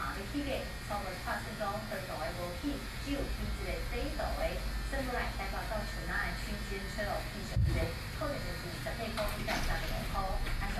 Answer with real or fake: real